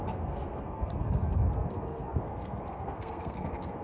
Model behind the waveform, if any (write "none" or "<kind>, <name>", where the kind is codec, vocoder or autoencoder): codec, SNAC